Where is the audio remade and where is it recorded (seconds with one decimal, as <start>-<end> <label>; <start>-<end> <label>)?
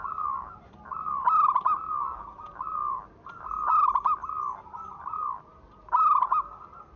0.0-7.0 recorded